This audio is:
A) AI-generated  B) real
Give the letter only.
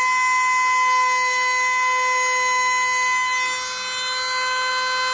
B